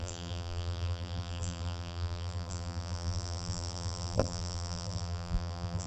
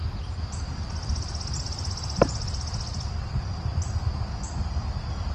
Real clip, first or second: second